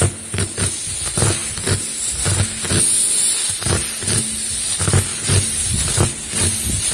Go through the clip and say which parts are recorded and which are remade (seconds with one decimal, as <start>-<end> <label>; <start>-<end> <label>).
0.0-6.9 recorded